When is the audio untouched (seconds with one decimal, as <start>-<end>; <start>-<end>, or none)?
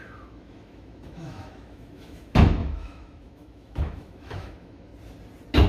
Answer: 4.9-5.7